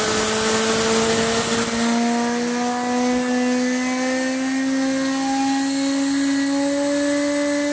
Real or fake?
real